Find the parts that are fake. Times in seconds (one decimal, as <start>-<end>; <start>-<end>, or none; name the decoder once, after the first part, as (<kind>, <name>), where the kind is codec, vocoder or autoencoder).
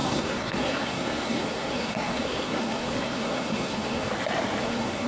0.0-4.1 (codec, SNAC); 4.6-5.1